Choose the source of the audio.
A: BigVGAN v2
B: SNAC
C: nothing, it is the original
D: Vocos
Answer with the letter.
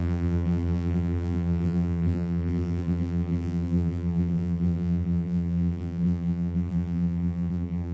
A